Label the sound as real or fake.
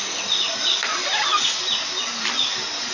real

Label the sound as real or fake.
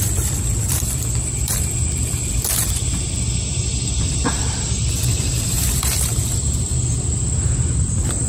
fake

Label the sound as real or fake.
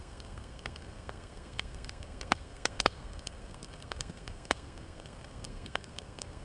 fake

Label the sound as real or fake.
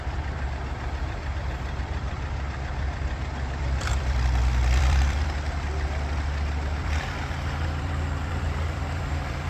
fake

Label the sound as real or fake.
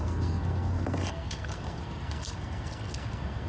fake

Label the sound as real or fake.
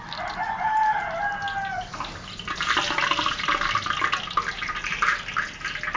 real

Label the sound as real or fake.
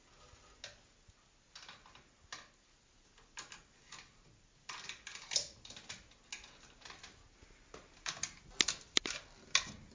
real